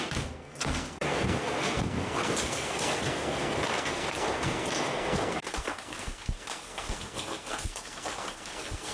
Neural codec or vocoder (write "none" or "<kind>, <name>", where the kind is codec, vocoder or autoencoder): codec, SNAC